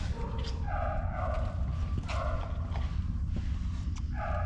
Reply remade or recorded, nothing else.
recorded